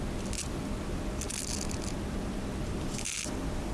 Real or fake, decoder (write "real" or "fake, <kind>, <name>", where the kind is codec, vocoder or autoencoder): real